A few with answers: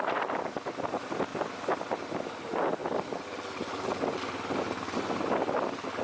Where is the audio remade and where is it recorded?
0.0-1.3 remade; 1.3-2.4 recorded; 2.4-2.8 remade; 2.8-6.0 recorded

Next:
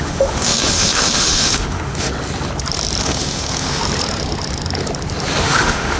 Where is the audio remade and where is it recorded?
0.0-2.1 remade; 2.1-3.0 recorded; 3.0-3.8 remade; 3.8-5.4 recorded; 5.4-6.0 remade

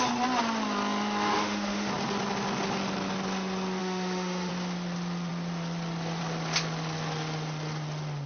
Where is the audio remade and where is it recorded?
0.0-1.3 recorded; 1.3-1.9 remade; 1.9-3.8 recorded; 3.8-4.5 remade; 4.5-8.3 recorded

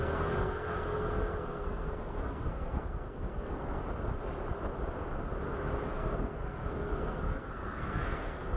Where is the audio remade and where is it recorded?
0.0-3.8 remade; 3.8-5.9 recorded; 5.9-8.6 remade

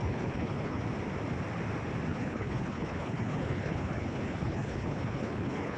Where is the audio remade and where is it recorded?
0.0-0.8 remade; 0.8-2.1 recorded; 2.1-5.8 remade

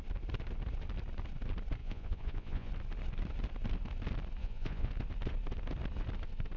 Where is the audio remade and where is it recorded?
0.0-1.8 recorded; 1.8-2.7 remade; 2.7-4.4 recorded; 4.4-4.9 remade; 4.9-6.6 recorded

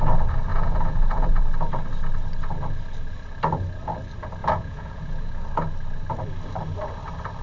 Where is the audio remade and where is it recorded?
0.0-0.5 recorded; 0.5-1.4 remade; 1.4-4.4 recorded; 4.4-5.5 remade; 5.5-7.4 recorded